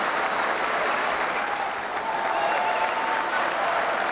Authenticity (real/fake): real